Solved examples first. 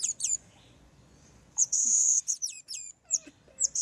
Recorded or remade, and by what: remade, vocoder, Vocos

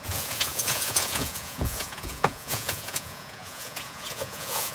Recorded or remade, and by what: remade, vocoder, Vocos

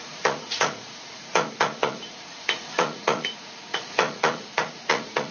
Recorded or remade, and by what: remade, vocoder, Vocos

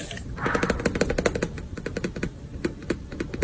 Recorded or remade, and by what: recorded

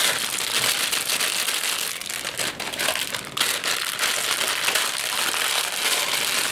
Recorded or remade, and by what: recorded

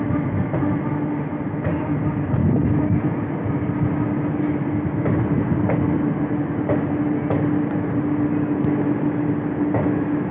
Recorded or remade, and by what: recorded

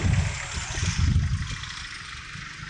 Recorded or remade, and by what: recorded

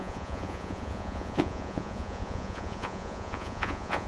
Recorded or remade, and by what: remade, vocoder, Vocos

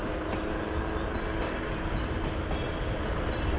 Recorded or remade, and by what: recorded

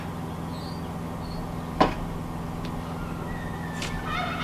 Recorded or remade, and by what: recorded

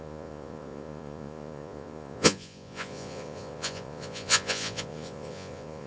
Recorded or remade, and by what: remade, vocoder, Vocos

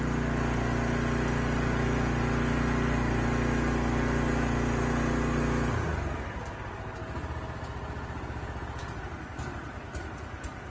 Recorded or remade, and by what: recorded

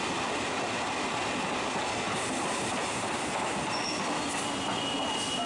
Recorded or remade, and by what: recorded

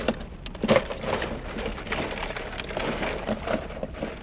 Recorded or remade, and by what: recorded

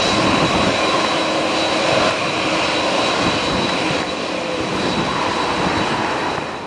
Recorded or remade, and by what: recorded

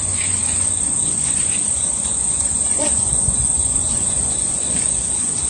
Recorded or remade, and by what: remade, vocoder, Vocos